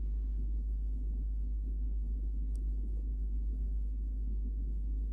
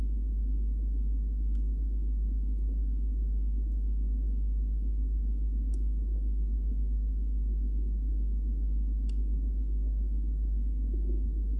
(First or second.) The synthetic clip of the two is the first